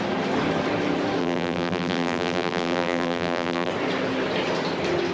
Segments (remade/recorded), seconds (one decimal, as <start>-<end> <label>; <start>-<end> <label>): 0.0-1.2 recorded; 1.2-3.7 remade; 3.7-5.1 recorded